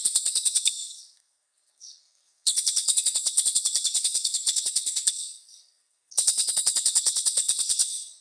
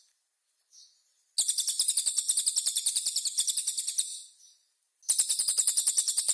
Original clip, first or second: second